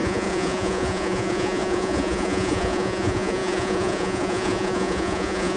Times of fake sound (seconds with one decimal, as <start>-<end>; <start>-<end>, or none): 0.0-5.6